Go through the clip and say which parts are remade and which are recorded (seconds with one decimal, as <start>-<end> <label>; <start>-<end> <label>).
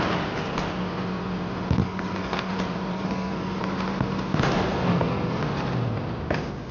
0.0-1.8 recorded; 1.8-2.5 remade; 2.5-2.9 recorded; 2.9-3.6 remade; 3.6-4.7 recorded; 4.7-5.4 remade; 5.4-6.7 recorded